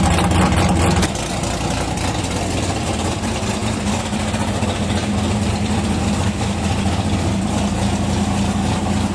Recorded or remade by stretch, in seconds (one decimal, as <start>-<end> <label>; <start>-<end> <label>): 0.0-9.1 recorded